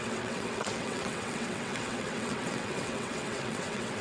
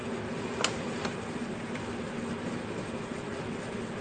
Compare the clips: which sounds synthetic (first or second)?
first